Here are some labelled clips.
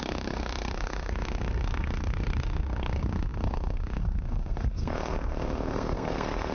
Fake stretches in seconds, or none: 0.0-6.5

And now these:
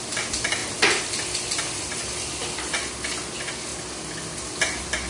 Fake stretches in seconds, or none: none

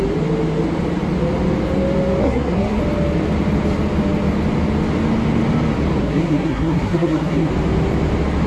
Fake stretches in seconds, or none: 2.2-2.8; 6.0-7.5

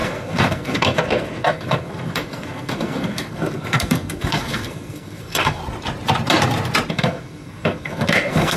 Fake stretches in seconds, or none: 0.0-5.6; 6.9-8.6

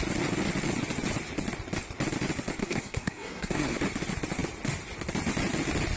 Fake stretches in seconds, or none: 2.6-3.8

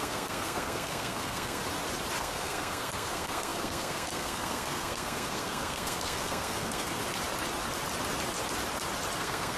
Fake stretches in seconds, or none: 0.0-1.6; 2.2-7.0; 9.2-9.6

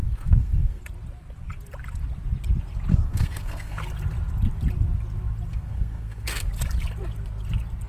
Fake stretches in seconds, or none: 0.0-0.8; 2.9-3.8; 5.5-6.5